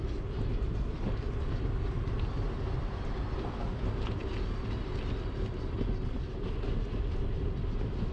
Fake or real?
real